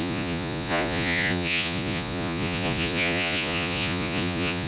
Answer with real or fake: fake